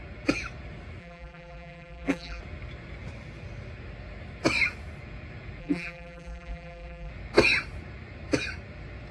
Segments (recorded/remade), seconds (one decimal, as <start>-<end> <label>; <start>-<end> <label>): 0.0-1.0 recorded; 1.0-2.4 remade; 2.4-5.6 recorded; 5.6-7.1 remade; 7.1-9.1 recorded